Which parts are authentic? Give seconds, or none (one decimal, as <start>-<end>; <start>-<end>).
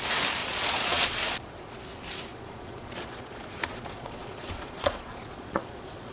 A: 0.0-0.4; 1.8-2.3